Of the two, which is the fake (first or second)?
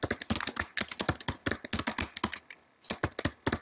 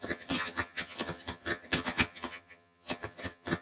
second